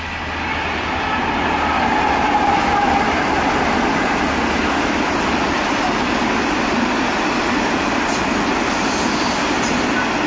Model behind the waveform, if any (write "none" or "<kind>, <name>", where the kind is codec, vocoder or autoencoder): none